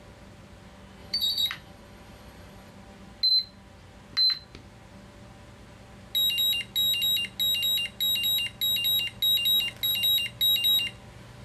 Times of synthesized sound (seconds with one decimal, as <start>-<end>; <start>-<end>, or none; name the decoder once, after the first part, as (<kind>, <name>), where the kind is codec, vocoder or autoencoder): 1.0-2.7 (vocoder, BigVGAN v2)